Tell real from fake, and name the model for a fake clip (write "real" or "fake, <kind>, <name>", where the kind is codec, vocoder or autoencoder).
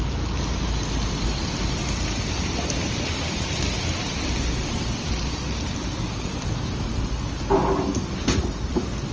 real